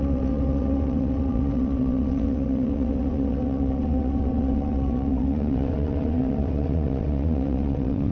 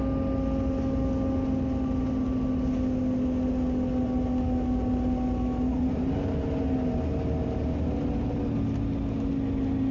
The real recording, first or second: second